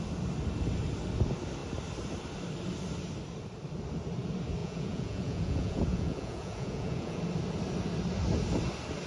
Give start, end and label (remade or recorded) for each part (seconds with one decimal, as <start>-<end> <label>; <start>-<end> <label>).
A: 0.0-4.6 recorded; 4.6-7.2 remade; 7.2-9.1 recorded